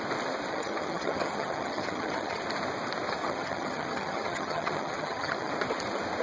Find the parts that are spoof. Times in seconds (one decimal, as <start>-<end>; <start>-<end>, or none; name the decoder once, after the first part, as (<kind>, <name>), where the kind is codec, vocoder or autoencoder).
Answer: 0.5-2.4 (vocoder, HiFi-GAN); 3.2-5.5